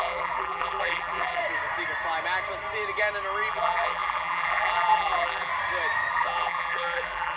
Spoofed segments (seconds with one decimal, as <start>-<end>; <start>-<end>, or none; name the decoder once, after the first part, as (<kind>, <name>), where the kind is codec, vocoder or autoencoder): 0.0-1.4 (vocoder, BigVGAN v2); 3.5-5.5; 6.1-7.4